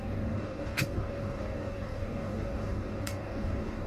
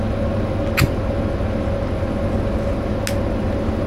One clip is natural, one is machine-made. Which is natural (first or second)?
second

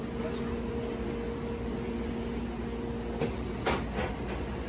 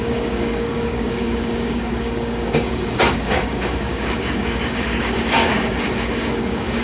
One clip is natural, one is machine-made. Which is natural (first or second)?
first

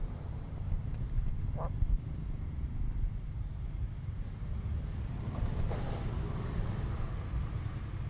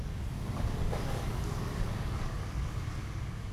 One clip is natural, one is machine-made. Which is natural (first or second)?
first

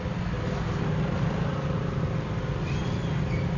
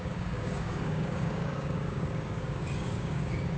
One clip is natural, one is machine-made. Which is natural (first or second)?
first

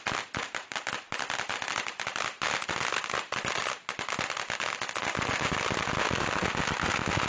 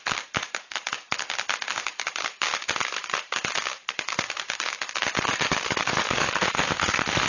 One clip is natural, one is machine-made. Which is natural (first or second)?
first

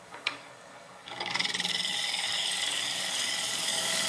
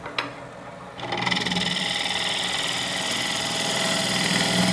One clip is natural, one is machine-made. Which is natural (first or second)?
second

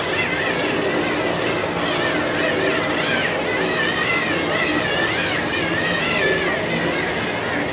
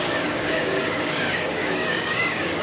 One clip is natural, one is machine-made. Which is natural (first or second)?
first